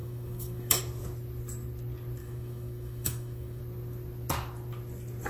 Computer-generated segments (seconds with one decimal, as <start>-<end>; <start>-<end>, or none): 0.0-0.8; 2.2-3.6